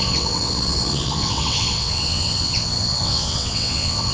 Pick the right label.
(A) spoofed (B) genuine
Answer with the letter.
A